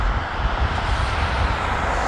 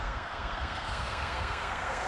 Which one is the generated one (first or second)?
second